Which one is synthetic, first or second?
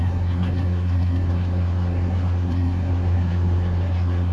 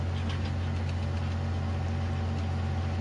first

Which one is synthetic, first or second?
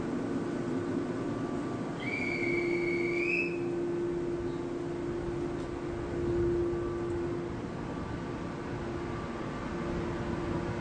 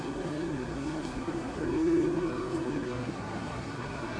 second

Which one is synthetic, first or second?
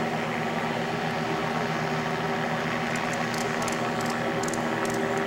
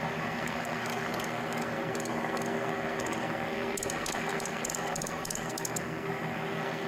second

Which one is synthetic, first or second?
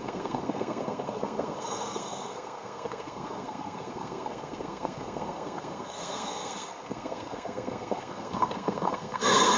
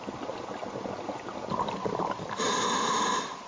first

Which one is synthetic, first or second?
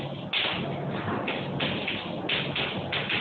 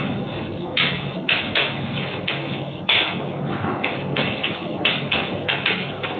second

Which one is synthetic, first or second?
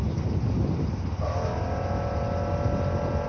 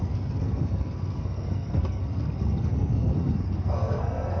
second